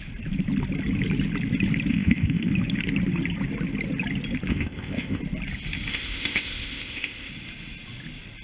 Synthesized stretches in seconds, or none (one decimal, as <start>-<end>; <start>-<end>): 1.9-2.5; 4.5-5.2; 5.9-7.3